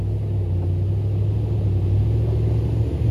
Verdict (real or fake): real